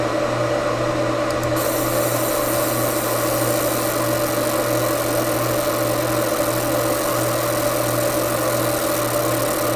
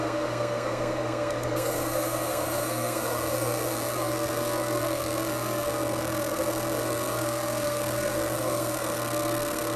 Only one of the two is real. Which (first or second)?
first